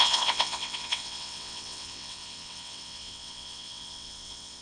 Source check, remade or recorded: remade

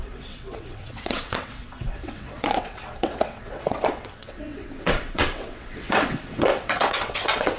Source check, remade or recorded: remade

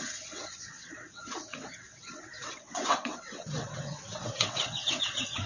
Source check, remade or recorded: remade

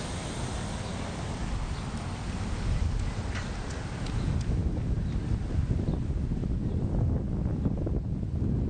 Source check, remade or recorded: recorded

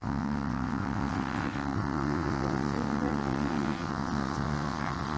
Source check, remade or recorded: remade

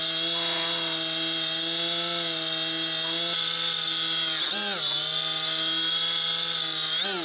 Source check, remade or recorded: recorded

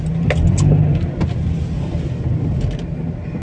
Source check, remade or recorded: recorded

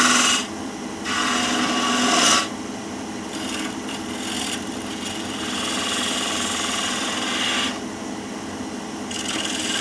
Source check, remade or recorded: recorded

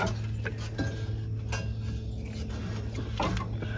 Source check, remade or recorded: recorded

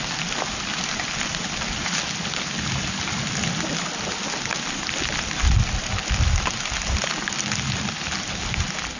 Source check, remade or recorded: recorded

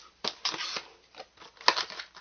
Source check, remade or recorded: recorded